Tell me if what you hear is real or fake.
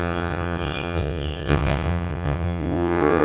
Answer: fake